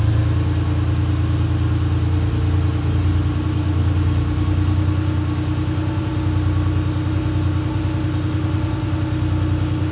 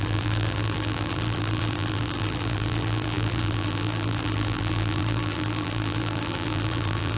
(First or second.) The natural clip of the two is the first